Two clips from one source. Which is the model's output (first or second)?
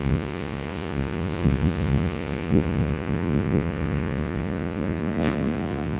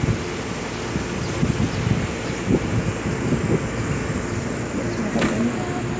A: first